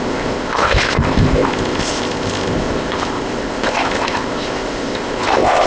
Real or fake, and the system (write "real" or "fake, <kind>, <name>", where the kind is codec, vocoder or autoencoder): fake, codec, ZipCodec